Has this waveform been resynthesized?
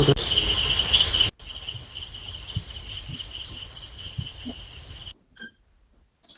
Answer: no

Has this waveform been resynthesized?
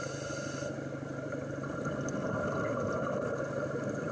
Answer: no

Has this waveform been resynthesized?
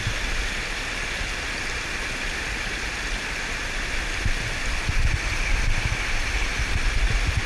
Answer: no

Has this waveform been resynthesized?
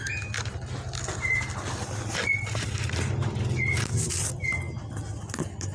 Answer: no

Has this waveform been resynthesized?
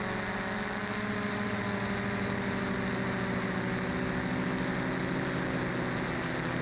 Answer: no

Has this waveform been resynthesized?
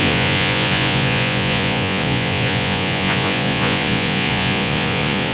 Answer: yes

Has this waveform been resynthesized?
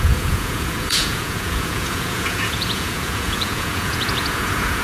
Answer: yes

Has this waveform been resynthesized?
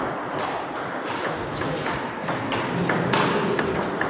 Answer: no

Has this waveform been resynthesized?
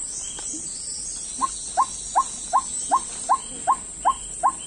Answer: no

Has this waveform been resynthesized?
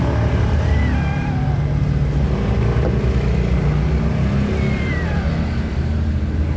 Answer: no